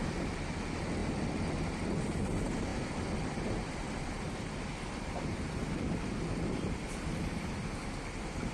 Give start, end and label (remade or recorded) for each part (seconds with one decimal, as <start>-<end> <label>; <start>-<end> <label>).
0.0-2.7 recorded; 2.7-7.8 remade; 7.8-8.5 recorded